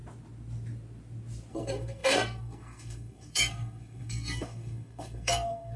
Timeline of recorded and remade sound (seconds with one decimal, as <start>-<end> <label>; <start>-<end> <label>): 0.0-1.5 recorded; 1.5-5.8 remade